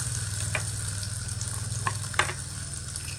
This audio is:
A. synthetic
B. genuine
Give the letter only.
B